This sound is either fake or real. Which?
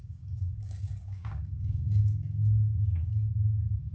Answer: fake